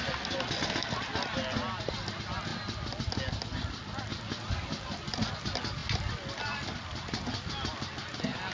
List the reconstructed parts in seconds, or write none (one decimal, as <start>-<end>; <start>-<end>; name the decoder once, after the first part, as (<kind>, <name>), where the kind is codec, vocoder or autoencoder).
none